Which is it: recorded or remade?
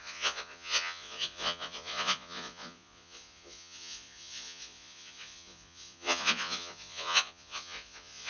remade